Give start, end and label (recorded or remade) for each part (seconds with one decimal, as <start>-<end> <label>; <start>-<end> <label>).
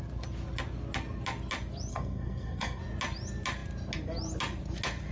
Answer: 0.0-1.9 recorded; 1.9-2.8 remade; 2.8-5.1 recorded